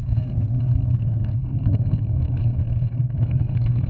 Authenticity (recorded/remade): remade